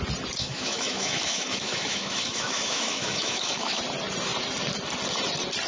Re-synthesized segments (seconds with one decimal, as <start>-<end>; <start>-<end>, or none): 0.4-3.8